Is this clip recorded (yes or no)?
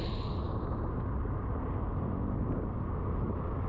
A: yes